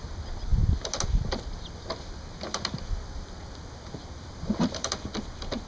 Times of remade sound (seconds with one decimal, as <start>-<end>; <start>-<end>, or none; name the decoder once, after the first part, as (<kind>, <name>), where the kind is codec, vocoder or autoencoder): none